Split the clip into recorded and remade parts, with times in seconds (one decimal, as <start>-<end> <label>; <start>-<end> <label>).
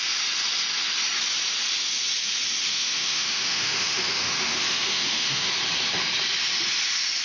0.0-2.7 recorded; 2.7-5.5 remade; 5.5-7.2 recorded